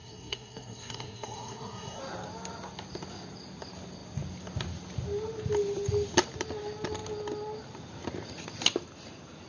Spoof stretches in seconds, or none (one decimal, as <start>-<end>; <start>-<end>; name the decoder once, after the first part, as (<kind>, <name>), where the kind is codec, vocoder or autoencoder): 0.0-2.0 (codec, SNAC)